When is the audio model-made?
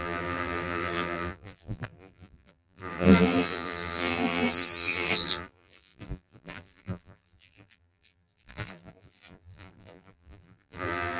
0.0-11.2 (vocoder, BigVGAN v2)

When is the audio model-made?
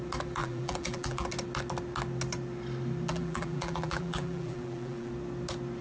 0.4-1.3 (vocoder, BigVGAN v2); 3.1-5.1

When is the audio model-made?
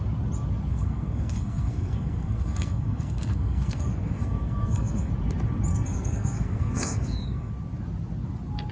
0.7-5.1 (codec, SNAC); 5.7-7.5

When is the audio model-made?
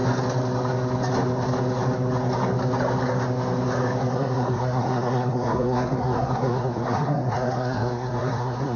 4.1-8.8 (codec, SNAC)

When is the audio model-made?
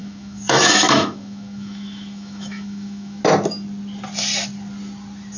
0.0-3.2 (autoencoder, DAC-VAE)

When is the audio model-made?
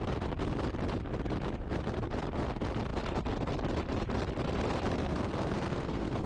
5.1-6.3 (codec, SNAC)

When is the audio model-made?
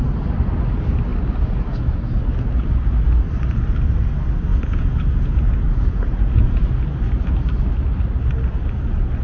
4.5-6.7 (vocoder, Vocos)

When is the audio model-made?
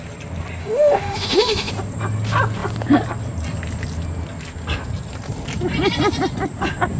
0.6-1.7 (autoencoder, DAC-VAE)